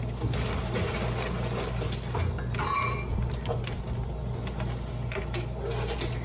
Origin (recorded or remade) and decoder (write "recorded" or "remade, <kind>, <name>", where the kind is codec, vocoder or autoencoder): recorded